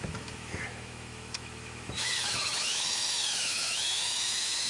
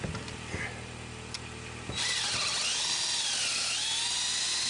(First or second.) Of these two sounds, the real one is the second